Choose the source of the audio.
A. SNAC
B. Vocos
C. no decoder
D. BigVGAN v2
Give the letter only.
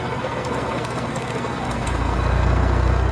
A